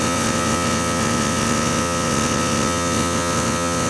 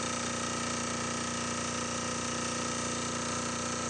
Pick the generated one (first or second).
first